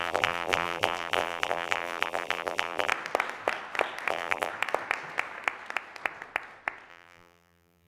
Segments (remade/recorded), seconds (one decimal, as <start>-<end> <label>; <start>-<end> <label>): 0.0-2.9 remade; 2.9-4.1 recorded; 4.1-4.5 remade; 4.5-6.9 recorded; 6.9-7.9 remade